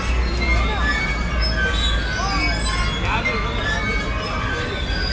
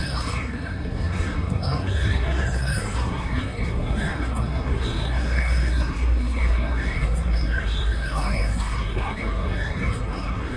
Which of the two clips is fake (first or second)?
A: second